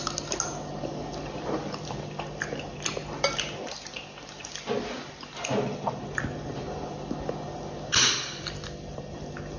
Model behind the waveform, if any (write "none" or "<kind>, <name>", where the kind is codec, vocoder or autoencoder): none